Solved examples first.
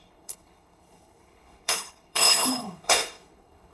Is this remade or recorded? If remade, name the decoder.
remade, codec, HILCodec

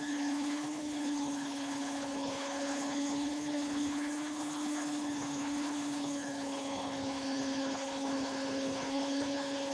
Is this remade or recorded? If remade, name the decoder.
remade, codec, HILCodec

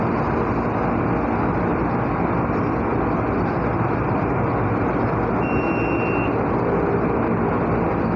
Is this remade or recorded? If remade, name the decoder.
recorded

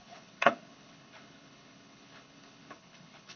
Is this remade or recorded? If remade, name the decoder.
remade, codec, HILCodec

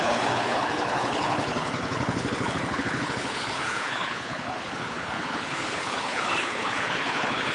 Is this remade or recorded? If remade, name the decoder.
remade, codec, HILCodec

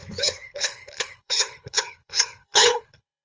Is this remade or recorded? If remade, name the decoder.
remade, codec, HILCodec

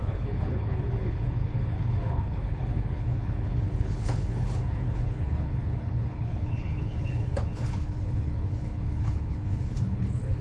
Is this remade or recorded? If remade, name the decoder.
remade, codec, HILCodec